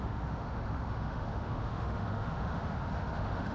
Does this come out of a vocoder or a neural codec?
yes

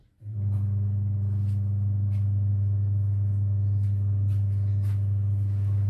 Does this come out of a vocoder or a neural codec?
no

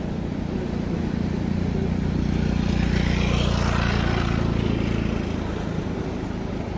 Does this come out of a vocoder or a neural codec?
no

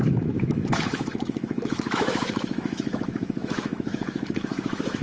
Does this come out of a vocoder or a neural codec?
yes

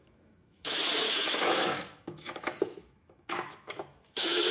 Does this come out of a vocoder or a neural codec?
yes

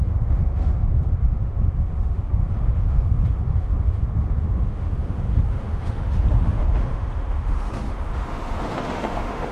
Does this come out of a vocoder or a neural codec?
yes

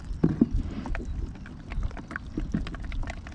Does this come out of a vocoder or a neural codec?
no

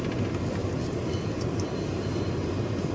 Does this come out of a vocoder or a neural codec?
no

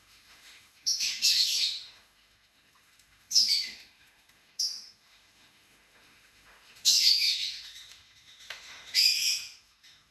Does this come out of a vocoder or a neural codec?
yes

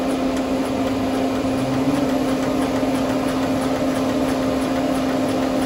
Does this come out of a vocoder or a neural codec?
no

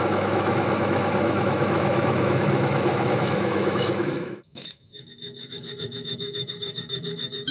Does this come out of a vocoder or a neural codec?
yes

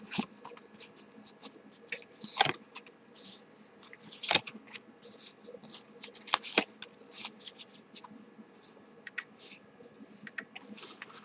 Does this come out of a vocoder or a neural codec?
no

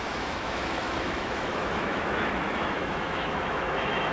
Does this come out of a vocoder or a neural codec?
yes